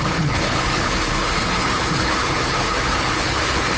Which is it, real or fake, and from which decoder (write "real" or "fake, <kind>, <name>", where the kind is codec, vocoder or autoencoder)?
fake, codec, HILCodec